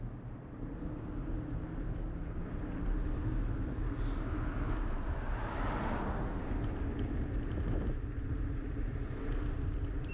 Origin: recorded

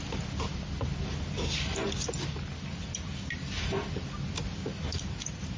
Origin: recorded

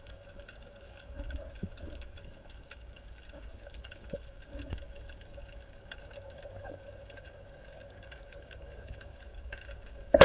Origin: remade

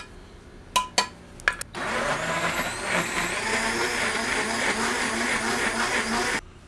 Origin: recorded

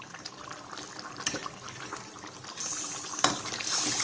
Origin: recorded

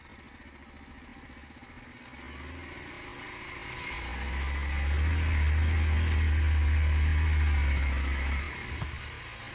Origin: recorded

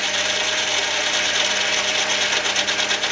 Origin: recorded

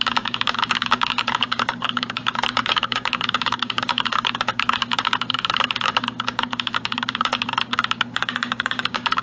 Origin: remade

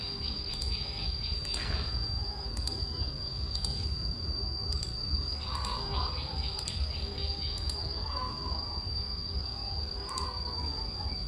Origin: remade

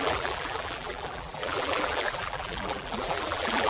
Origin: remade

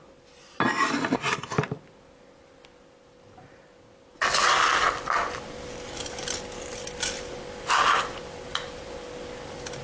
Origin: recorded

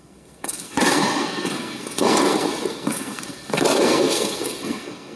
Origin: remade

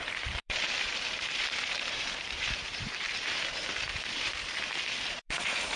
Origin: remade